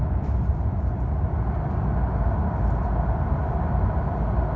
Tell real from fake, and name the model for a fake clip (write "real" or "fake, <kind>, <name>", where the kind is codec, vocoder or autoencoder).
real